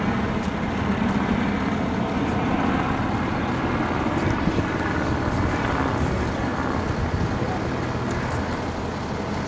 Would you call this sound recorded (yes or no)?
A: yes